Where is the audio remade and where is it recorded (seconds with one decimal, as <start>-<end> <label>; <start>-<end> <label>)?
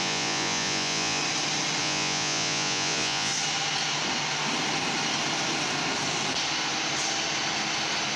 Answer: 0.0-1.2 remade; 1.2-1.8 recorded; 1.8-3.3 remade; 3.3-8.2 recorded